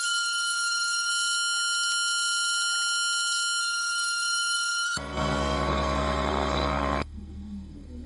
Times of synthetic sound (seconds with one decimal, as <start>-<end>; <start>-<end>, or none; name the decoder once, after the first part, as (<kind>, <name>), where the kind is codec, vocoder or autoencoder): 0.0-1.1 (codec, SNAC); 3.6-8.1